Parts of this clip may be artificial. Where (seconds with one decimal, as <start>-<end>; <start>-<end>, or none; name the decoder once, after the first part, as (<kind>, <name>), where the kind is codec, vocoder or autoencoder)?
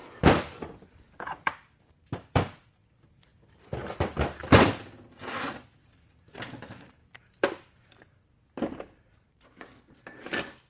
0.0-3.3 (vocoder, BigVGAN v2); 5.9-10.7